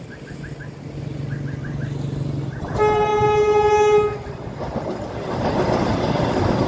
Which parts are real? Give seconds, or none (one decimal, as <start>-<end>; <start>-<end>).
0.0-6.7